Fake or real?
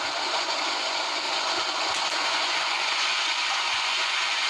fake